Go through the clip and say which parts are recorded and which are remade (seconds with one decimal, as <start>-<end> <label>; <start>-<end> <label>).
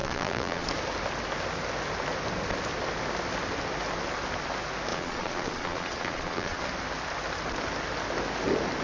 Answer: 0.0-0.7 remade; 0.7-4.9 recorded; 4.9-6.6 remade; 6.6-8.8 recorded